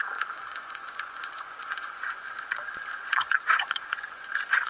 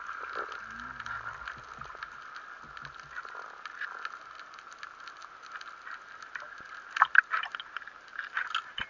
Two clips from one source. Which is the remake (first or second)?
first